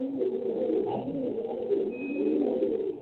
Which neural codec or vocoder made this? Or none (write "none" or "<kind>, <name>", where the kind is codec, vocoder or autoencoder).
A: autoencoder, DAC-VAE